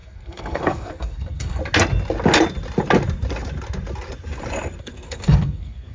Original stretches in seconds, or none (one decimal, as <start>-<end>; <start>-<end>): 1.6-4.8